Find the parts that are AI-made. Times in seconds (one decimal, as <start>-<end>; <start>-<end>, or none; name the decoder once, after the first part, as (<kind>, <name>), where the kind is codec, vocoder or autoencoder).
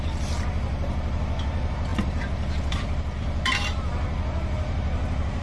0.0-5.4 (vocoder, BigVGAN v2)